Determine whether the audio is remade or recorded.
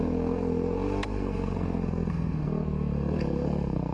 remade